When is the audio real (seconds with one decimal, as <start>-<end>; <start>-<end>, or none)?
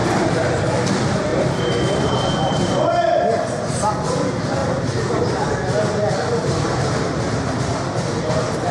0.6-1.3; 3.9-8.7